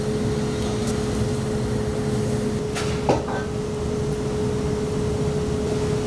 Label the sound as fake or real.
real